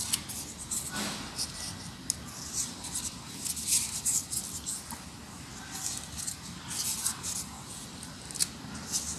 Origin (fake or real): real